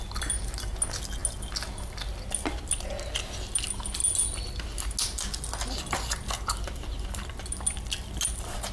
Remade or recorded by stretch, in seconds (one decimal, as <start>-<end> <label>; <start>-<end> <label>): 0.0-8.7 recorded